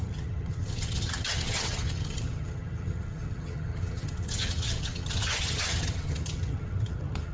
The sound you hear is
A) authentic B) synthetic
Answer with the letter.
B